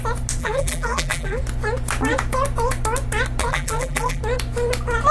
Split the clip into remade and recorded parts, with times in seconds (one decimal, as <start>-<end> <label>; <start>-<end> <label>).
0.0-0.4 recorded; 0.4-1.4 remade; 1.4-3.4 recorded; 3.4-4.2 remade; 4.2-5.1 recorded

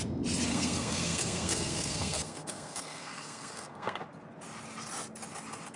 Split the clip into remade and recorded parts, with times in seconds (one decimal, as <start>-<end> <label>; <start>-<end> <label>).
0.0-0.5 recorded; 0.5-4.0 remade; 4.0-5.8 recorded